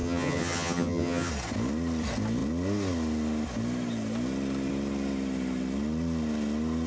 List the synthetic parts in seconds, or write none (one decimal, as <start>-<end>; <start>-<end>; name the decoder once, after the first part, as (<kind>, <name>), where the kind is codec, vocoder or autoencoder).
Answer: 0.0-1.3 (vocoder, HiFi-GAN)